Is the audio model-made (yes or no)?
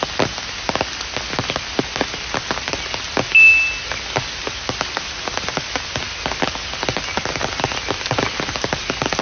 no